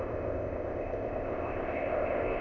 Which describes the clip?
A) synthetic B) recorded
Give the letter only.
A